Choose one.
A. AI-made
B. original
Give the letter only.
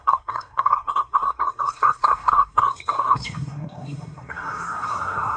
A